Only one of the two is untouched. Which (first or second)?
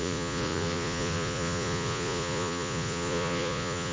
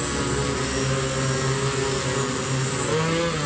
second